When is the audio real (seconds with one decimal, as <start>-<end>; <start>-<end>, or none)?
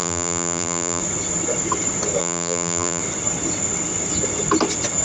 1.0-2.2; 3.0-5.0